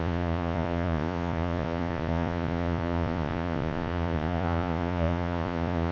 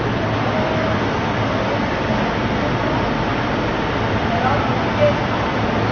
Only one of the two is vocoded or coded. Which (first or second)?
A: first